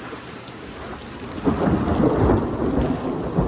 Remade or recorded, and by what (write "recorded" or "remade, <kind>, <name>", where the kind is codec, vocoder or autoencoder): recorded